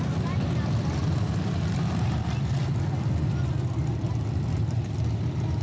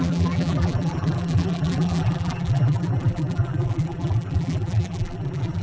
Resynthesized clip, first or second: second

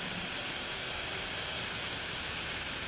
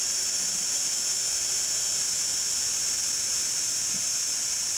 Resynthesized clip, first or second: first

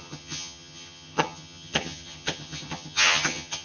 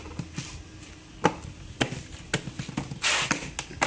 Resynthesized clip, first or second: first